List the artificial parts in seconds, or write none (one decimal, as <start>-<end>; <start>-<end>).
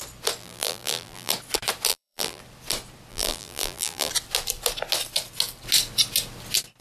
0.4-1.3; 1.9-2.4; 3.1-4.1